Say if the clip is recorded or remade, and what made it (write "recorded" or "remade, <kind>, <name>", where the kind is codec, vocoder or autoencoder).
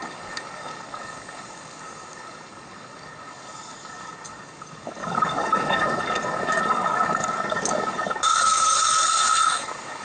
remade, codec, DAC